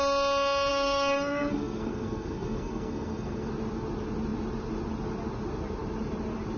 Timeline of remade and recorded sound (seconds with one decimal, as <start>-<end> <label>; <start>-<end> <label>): 0.0-0.7 recorded; 0.7-3.5 remade; 3.5-6.6 recorded